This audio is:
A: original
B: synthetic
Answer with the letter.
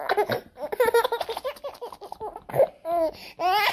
A